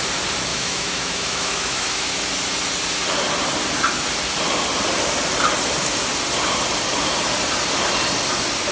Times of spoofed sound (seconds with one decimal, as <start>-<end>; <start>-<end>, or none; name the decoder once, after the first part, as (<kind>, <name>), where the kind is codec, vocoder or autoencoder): 0.5-2.3 (autoencoder, DAC-VAE)

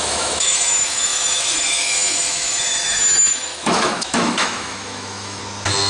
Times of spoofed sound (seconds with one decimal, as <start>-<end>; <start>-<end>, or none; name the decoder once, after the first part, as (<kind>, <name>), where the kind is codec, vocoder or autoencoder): 0.0-5.4 (autoencoder, DAC-VAE)

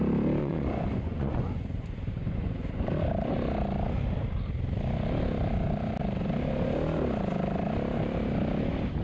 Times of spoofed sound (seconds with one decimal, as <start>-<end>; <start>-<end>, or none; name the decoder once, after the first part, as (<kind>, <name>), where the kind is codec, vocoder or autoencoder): 0.4-2.9 (vocoder, Vocos)

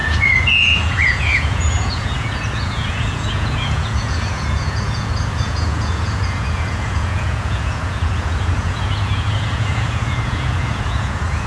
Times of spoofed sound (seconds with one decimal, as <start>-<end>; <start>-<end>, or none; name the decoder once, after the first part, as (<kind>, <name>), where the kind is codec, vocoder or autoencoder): 0.0-11.5 (vocoder, Vocos)

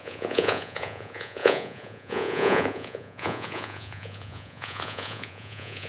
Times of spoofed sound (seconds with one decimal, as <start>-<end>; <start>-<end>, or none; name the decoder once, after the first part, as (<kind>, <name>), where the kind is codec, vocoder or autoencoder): 0.0-5.9 (vocoder, Vocos)

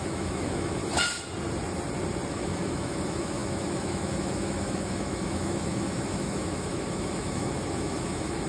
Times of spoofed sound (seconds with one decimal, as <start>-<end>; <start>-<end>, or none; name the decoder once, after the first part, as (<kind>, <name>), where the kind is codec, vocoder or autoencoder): 0.0-0.8 (autoencoder, DAC-VAE); 2.3-8.5

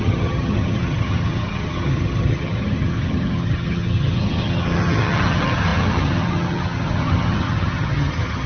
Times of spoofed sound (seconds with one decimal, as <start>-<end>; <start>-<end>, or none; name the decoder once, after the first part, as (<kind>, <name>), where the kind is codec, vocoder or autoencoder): 0.0-8.5 (vocoder, HiFi-GAN)